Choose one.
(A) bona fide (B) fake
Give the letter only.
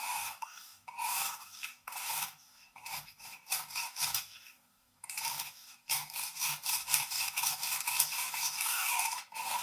B